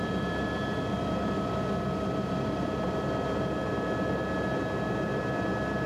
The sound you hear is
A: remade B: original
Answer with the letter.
B